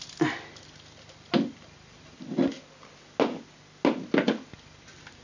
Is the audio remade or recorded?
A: recorded